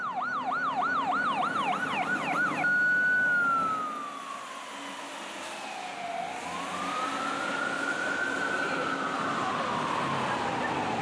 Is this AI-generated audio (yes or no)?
no